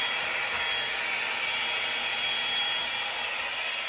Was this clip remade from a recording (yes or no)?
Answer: no